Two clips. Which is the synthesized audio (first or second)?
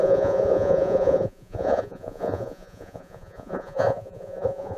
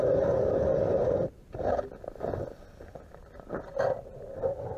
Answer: first